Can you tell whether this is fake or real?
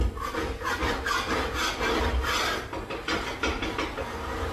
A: real